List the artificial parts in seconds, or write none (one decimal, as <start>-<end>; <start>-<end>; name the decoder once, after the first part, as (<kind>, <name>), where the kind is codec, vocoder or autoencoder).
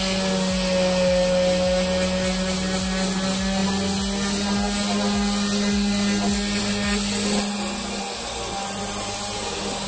none